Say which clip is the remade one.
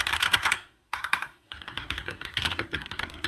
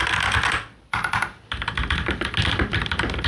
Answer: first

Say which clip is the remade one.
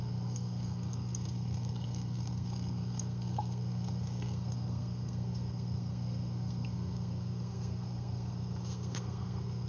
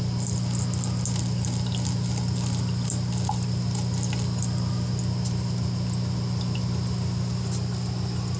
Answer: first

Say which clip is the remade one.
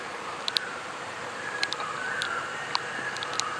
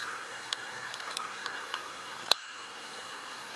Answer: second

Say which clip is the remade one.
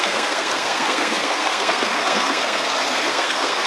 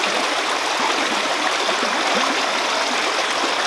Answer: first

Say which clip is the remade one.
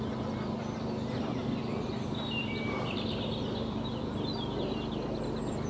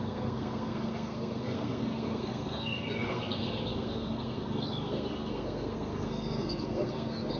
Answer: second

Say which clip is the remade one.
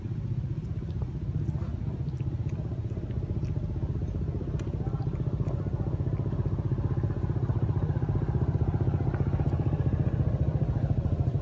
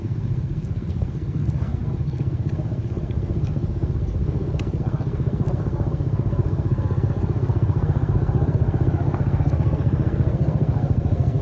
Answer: second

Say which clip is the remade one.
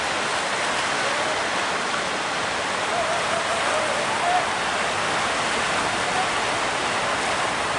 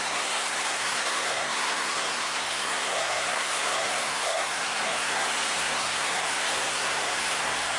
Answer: second